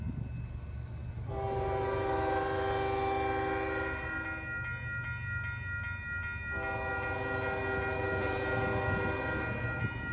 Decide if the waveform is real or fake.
real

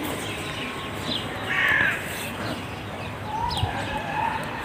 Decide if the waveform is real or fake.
real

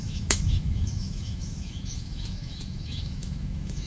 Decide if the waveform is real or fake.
fake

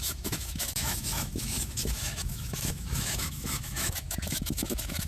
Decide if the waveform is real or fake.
fake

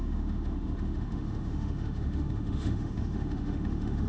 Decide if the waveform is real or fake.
fake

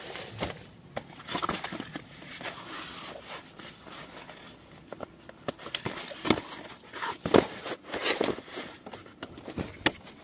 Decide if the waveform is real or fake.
real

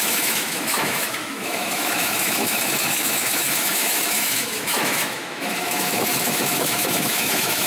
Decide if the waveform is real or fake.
fake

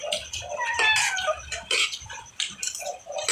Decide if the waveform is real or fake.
real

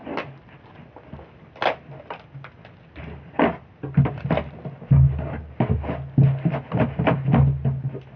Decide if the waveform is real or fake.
real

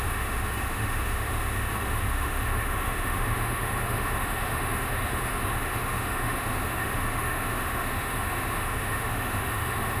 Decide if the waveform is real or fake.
fake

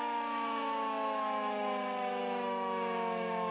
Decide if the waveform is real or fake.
fake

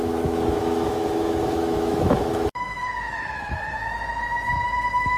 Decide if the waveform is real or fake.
fake